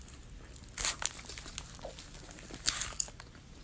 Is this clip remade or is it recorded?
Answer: recorded